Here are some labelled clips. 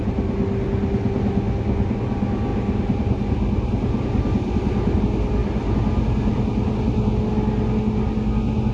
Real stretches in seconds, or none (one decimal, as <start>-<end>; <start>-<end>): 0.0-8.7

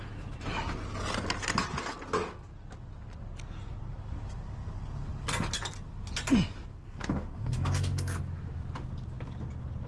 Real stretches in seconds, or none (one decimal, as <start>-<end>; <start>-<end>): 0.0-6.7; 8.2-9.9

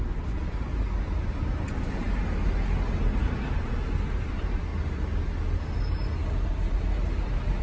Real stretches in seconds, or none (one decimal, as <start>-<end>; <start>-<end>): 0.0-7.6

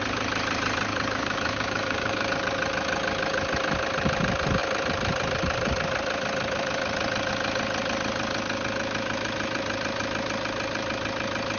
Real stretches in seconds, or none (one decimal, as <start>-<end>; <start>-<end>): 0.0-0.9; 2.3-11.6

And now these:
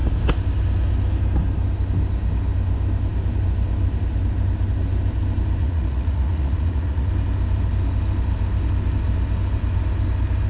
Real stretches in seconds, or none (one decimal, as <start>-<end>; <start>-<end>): 0.0-5.6; 7.1-10.5

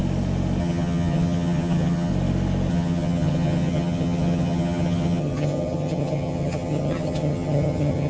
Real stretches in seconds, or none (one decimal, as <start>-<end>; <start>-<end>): 0.0-0.6; 2.1-2.7

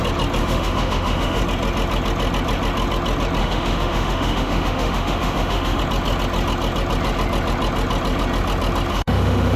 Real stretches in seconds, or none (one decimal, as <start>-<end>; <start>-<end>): 0.0-0.4; 1.4-3.4; 5.8-8.9